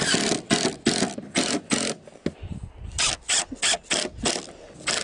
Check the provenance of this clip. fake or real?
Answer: real